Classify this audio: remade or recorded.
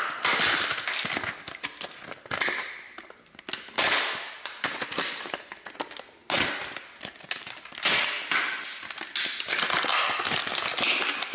recorded